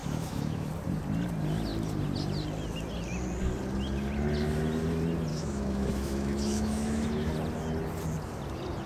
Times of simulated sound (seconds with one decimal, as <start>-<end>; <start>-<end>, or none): 0.0-0.7; 5.3-7.3